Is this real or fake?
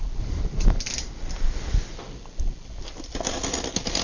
real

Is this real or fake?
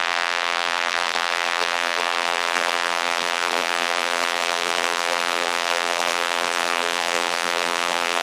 fake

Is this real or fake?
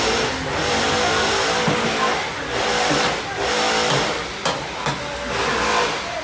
real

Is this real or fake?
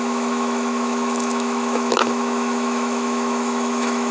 fake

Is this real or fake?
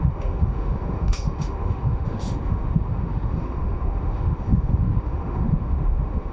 fake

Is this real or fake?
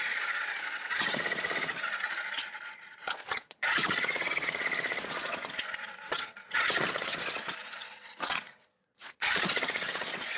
fake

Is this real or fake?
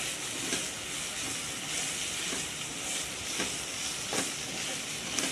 real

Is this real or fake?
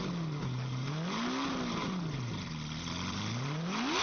real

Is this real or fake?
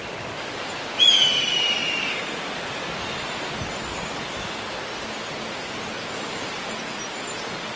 real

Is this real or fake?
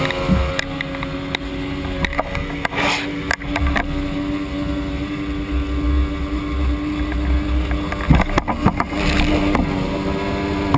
real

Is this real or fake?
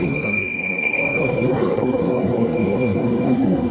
fake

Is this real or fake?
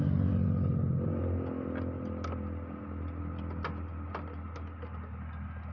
real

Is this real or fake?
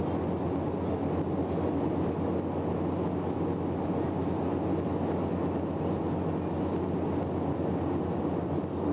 real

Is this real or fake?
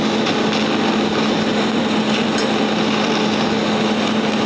real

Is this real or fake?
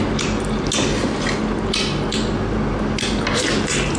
real